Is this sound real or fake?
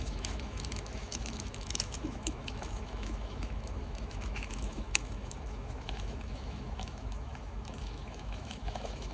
fake